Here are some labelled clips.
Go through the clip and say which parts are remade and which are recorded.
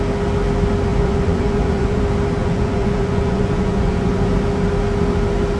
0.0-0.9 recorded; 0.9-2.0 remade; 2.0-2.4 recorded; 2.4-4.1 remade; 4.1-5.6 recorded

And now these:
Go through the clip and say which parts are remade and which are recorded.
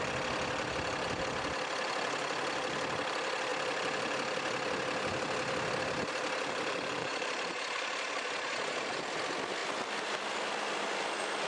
0.0-7.0 recorded; 7.0-9.0 remade; 9.0-11.5 recorded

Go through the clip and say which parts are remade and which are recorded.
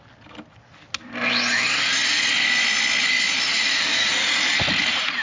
0.0-3.5 recorded; 3.5-4.1 remade; 4.1-5.2 recorded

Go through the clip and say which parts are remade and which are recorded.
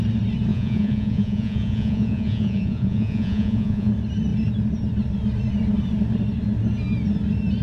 0.0-0.5 recorded; 0.5-3.9 remade; 3.9-7.6 recorded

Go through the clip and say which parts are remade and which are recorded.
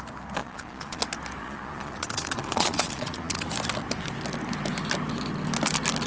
0.0-0.4 recorded; 0.4-1.0 remade; 1.0-1.4 recorded; 1.4-3.5 remade; 3.5-6.1 recorded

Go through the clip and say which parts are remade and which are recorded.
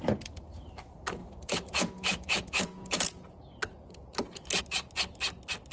0.0-1.2 recorded; 1.2-4.6 remade; 4.6-5.7 recorded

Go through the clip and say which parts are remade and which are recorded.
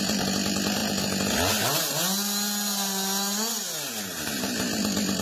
0.0-5.2 recorded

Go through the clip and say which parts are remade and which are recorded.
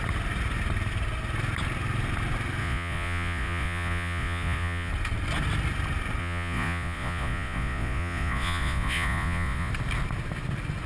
0.0-2.6 recorded; 2.6-4.9 remade; 4.9-6.2 recorded; 6.2-9.7 remade; 9.7-10.9 recorded